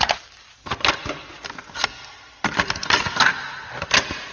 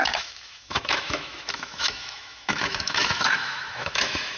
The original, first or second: first